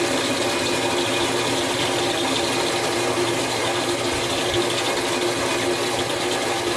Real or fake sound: real